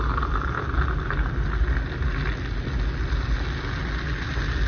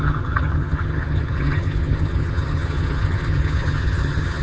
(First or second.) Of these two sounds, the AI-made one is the second